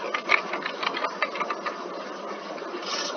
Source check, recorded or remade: recorded